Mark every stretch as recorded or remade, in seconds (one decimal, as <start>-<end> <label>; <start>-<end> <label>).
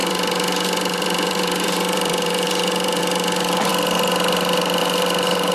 0.0-3.0 remade; 3.0-5.5 recorded